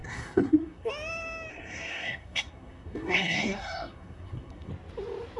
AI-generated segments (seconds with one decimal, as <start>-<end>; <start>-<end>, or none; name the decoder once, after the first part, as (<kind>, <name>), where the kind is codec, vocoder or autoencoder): 0.0-0.9 (codec, SNAC); 1.5-4.7